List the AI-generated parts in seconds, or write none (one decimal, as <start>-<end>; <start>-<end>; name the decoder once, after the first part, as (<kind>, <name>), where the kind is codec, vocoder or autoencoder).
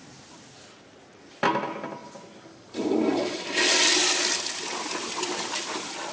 none